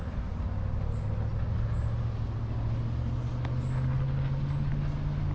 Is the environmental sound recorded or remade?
recorded